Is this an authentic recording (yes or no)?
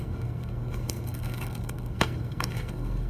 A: no